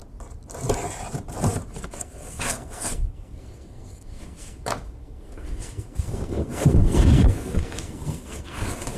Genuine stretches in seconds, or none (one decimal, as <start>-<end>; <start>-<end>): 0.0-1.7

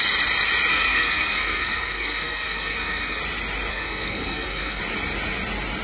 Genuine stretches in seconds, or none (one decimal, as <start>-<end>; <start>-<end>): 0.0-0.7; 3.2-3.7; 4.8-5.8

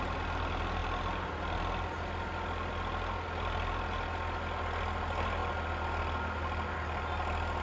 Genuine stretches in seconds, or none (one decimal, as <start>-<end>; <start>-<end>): 0.0-7.6

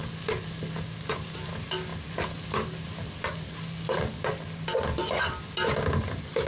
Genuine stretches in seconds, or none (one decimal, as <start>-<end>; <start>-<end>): 0.0-6.5

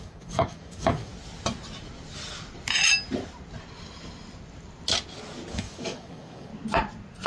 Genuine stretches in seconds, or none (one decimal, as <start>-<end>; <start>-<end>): 1.1-5.5; 6.5-7.3